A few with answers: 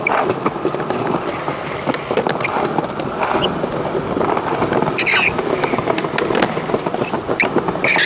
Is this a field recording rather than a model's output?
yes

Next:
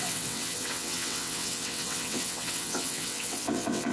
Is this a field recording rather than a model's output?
no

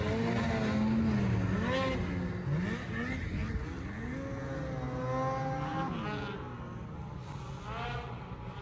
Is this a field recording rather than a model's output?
yes